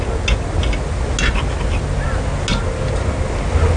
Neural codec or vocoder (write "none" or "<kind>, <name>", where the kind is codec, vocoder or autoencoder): none